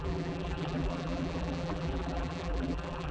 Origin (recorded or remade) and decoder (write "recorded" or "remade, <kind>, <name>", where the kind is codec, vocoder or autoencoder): remade, vocoder, BigVGAN v2